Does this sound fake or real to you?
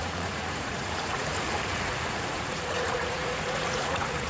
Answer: fake